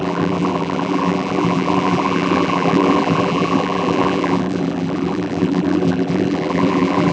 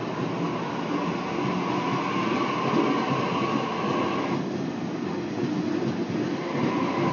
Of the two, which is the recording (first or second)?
second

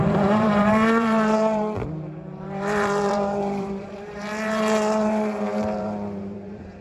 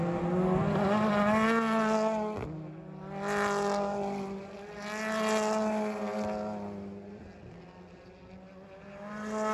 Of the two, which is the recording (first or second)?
second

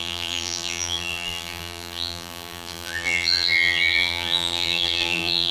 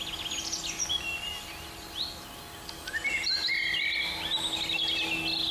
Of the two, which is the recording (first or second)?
second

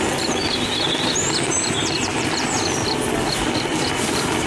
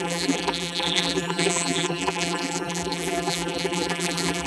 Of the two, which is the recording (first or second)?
first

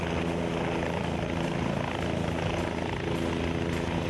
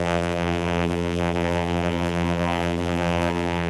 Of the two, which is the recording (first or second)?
first